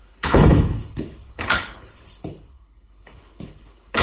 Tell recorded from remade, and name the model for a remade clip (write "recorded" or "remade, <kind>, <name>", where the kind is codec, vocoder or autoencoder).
remade, codec, HILCodec